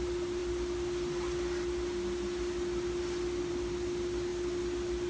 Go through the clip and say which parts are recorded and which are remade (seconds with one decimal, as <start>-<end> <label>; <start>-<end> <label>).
0.0-5.1 recorded